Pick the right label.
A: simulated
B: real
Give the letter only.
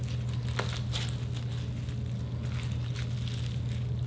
B